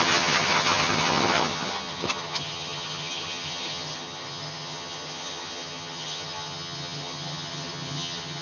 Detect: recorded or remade remade